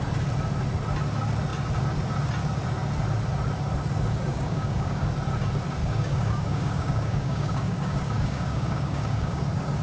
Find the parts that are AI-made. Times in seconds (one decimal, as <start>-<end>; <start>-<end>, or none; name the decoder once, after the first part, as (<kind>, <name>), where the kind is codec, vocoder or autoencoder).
4.3-5.1 (codec, DAC); 5.8-9.4